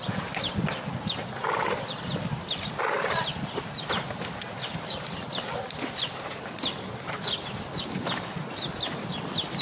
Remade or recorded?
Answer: recorded